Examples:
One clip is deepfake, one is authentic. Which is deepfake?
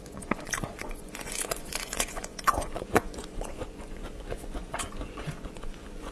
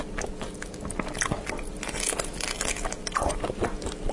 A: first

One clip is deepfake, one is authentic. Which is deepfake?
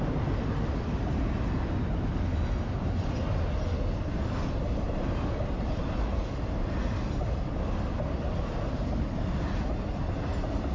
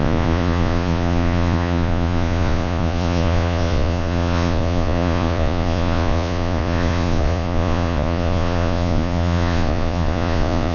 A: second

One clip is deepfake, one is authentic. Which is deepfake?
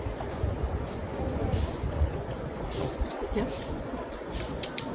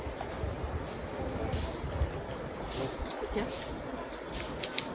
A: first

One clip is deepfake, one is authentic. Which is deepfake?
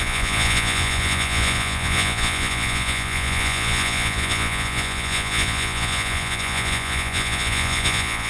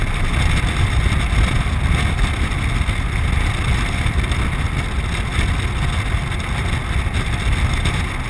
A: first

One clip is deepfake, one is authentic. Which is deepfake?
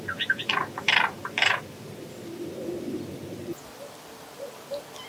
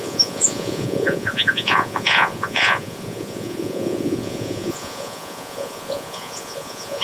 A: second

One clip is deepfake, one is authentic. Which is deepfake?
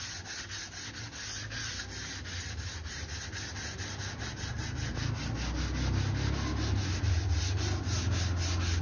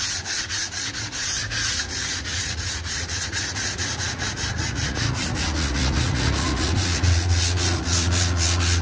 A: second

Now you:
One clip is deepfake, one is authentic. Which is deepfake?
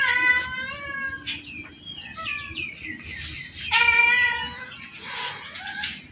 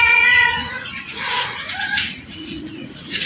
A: second